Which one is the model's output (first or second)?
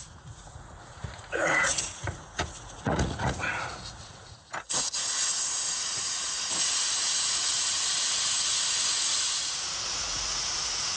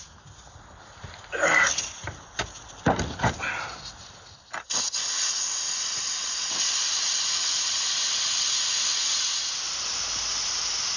first